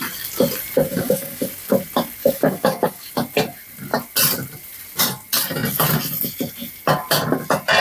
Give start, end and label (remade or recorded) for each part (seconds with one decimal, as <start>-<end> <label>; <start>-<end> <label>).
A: 0.0-0.9 recorded; 0.9-1.5 remade; 1.5-2.2 recorded; 2.2-3.1 remade; 3.1-7.8 recorded